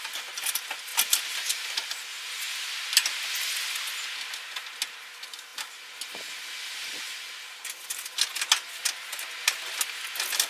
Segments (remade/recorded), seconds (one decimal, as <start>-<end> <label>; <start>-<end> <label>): 0.0-10.5 recorded